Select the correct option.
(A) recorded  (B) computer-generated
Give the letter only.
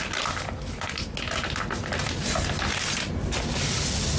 A